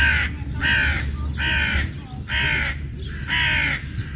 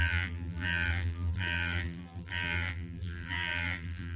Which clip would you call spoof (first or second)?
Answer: second